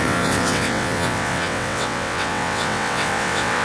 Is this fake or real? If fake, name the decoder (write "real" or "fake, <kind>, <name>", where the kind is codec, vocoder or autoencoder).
fake, vocoder, WaveNeXt